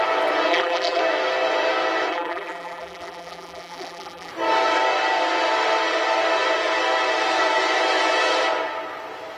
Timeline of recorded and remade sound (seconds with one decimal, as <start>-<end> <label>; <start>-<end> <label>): 0.0-0.5 recorded; 0.5-1.0 remade; 1.0-2.1 recorded; 2.1-4.3 remade; 4.3-9.4 recorded